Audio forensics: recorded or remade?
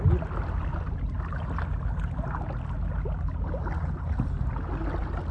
recorded